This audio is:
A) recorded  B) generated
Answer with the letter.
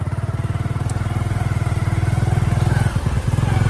A